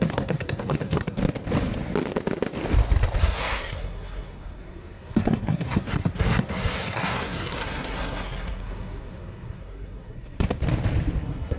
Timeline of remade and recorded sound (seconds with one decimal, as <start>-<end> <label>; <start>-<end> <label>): 0.0-1.2 remade; 1.2-3.2 recorded; 3.2-10.6 remade; 10.6-11.2 recorded; 11.2-11.6 remade